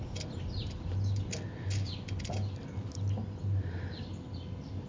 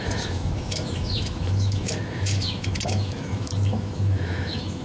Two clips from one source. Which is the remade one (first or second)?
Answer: second